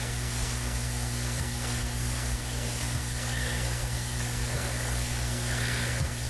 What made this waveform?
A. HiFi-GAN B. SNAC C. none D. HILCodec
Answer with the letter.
B